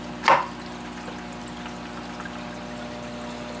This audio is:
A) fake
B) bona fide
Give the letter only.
B